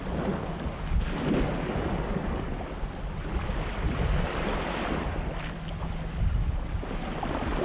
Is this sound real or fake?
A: real